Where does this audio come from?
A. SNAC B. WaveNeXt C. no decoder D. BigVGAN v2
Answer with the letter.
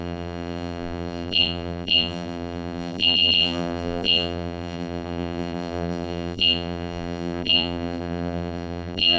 D